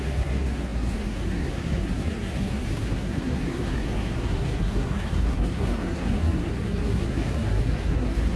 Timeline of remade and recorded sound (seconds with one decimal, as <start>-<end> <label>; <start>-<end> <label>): 0.0-8.4 remade